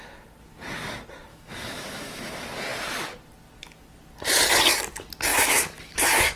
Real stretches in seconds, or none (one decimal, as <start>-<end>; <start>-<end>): 0.0-1.3; 2.2-5.3